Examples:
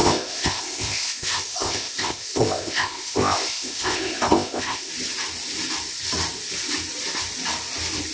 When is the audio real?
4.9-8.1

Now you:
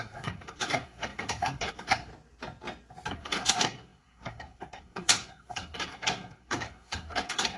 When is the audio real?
2.1-3.1